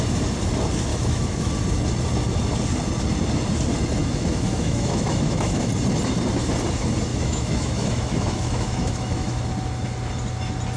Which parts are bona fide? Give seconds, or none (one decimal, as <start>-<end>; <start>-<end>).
0.0-0.9; 1.5-4.0; 5.7-7.1; 9.4-10.8